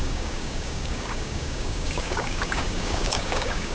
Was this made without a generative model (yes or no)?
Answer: no